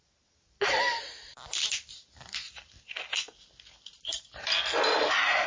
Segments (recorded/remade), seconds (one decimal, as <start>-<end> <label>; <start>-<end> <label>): 0.0-5.5 recorded